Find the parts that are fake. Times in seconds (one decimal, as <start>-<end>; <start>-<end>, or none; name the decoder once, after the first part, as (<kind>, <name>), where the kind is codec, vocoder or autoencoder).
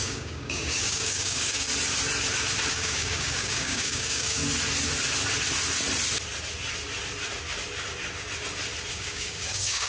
0.0-1.7 (codec, DAC); 2.7-4.4; 8.9-9.9